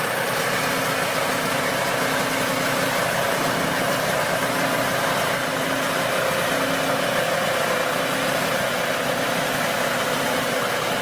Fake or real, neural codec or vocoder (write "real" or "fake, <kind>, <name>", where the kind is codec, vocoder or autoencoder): real